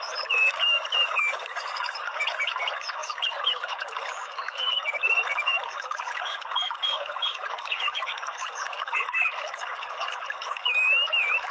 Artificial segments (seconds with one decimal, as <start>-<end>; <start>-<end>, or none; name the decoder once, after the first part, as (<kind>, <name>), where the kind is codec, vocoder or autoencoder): 0.0-11.5 (codec, DAC)